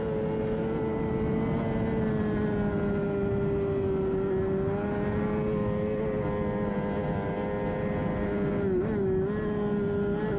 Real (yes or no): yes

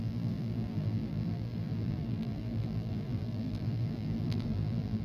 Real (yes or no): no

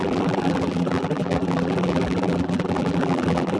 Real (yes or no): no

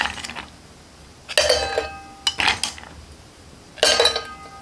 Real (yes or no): yes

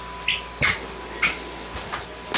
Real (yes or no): yes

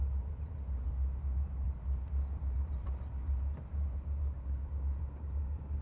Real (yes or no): no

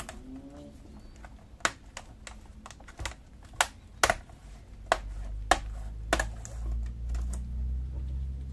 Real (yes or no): yes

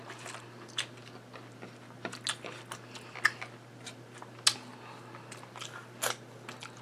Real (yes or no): yes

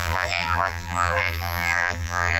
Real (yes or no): no